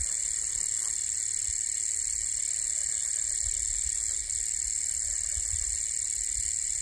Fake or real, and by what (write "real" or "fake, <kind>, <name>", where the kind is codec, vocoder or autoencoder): real